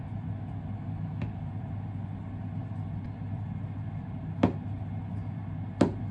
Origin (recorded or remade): recorded